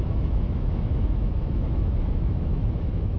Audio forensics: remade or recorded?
remade